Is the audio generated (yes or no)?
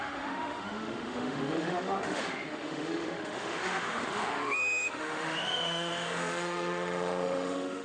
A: yes